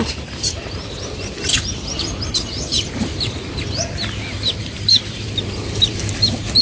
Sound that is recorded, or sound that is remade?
remade